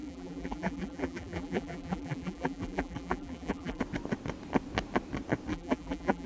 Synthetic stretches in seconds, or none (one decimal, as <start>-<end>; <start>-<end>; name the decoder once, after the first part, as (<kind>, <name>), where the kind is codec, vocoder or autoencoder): 0.0-3.8 (vocoder, BigVGAN v2); 5.5-6.3